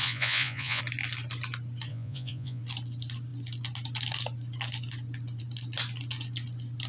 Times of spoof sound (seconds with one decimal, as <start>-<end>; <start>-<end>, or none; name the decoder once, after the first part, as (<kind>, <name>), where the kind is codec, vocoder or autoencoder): 0.0-0.8 (vocoder, Vocos); 1.9-2.6